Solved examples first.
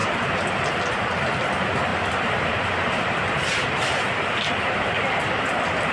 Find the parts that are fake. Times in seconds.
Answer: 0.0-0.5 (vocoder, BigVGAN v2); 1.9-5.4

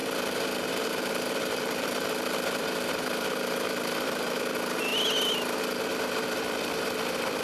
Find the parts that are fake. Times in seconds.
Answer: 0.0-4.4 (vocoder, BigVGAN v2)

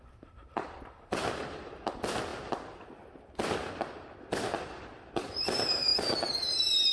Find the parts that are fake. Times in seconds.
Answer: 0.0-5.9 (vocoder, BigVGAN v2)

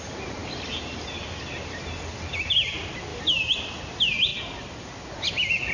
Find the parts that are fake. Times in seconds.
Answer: 0.4-1.4 (vocoder, BigVGAN v2); 3.1-3.8

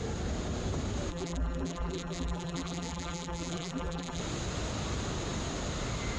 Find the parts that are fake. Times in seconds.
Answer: 1.1-4.2 (vocoder, BigVGAN v2)